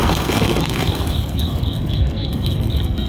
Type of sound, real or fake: fake